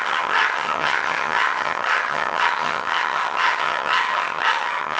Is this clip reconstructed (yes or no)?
yes